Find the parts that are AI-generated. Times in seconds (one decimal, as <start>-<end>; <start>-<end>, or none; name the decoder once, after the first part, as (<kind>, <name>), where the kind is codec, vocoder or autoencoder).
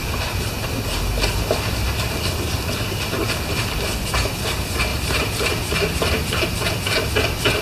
4.9-6.7 (vocoder, BigVGAN v2)